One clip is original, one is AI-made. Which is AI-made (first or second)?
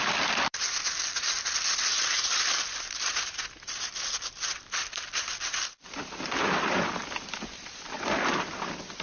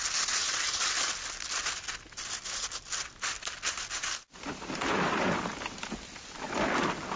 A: first